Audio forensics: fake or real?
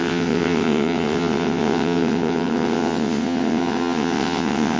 fake